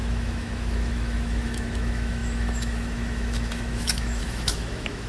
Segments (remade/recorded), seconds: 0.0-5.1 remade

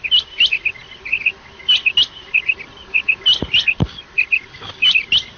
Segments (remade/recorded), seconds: 0.0-5.4 recorded